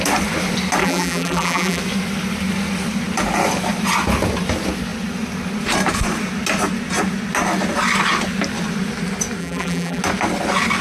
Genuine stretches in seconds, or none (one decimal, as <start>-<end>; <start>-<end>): 0.0-0.8; 1.8-9.4; 10.0-10.8

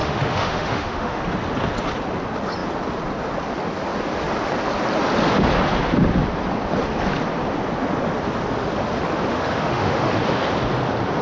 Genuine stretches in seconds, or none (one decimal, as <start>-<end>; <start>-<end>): 1.2-9.3; 10.1-11.2

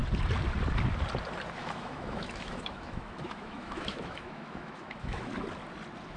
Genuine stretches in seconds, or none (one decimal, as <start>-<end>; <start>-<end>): 0.0-1.6; 5.3-6.2

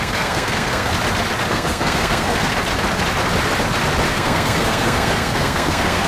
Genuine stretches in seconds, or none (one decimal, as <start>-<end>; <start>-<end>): 0.9-1.5; 2.5-4.1

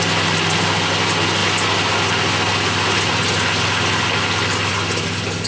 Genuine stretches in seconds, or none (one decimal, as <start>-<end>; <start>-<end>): 0.0-5.5